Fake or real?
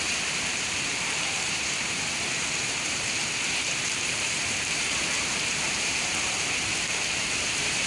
fake